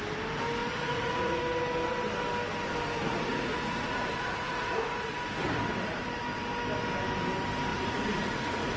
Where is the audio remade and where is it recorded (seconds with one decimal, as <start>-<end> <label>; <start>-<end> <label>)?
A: 0.0-0.6 recorded; 0.6-1.4 remade; 1.4-3.1 recorded; 3.1-5.1 remade; 5.1-7.7 recorded; 7.7-8.8 remade